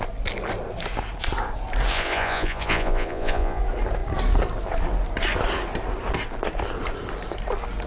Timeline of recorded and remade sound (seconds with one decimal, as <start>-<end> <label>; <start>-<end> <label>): 0.0-1.9 recorded; 1.9-3.6 remade; 3.6-7.9 recorded